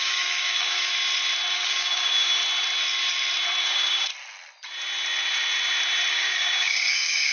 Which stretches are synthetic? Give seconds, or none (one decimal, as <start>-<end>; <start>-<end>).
0.0-0.9; 1.5-2.4; 3.6-4.1; 6.1-7.3